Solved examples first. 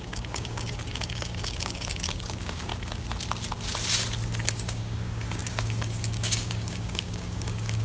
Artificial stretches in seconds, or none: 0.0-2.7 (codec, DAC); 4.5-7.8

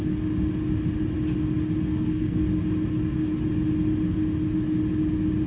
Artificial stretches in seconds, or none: 1.9-2.4 (codec, SNAC)

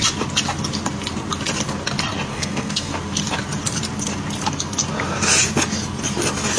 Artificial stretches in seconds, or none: 2.3-2.9 (codec, SNAC)

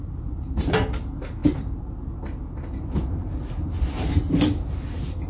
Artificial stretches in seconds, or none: none

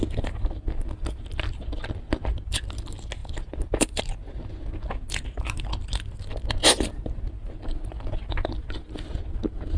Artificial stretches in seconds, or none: 3.2-4.0 (vocoder, BigVGAN v2); 6.6-9.2